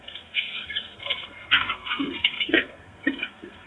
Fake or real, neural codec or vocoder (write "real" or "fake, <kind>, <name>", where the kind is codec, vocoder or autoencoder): fake, codec, SNAC